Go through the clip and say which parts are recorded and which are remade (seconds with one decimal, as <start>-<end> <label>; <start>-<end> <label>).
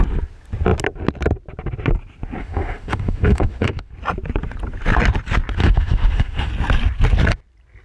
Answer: 0.0-2.4 recorded; 2.4-3.9 remade; 3.9-5.6 recorded; 5.6-6.5 remade; 6.5-7.8 recorded